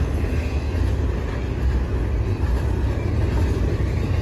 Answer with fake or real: real